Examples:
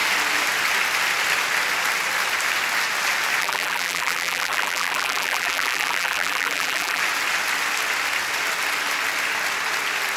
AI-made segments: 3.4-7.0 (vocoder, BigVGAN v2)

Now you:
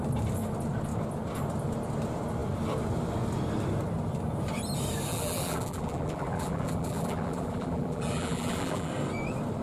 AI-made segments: 5.1-8.9 (vocoder, BigVGAN v2)

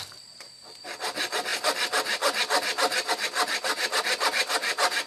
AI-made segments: none

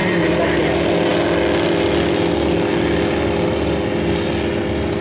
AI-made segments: none